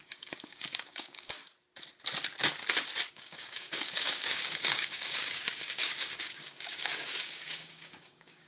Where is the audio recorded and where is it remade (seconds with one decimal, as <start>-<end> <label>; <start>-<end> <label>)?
0.0-1.4 remade; 1.4-3.1 recorded; 3.1-8.5 remade